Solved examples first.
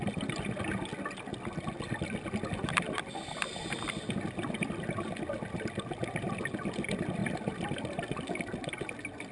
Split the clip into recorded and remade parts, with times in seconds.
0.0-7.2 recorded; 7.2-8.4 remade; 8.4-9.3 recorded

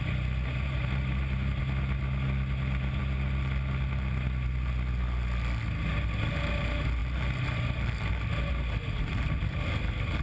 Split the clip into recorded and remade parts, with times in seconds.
0.0-0.5 recorded; 0.5-1.6 remade; 1.6-10.2 recorded

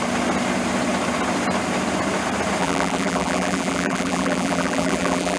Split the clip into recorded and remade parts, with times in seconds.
0.0-2.6 recorded; 2.6-5.4 remade